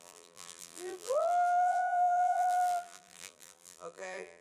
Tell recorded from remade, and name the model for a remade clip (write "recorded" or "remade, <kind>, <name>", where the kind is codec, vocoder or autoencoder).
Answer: remade, vocoder, BigVGAN v2